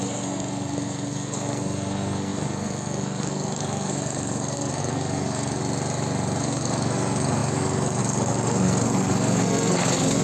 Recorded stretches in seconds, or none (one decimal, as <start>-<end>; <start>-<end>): 5.6-6.4